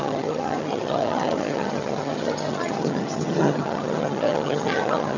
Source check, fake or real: fake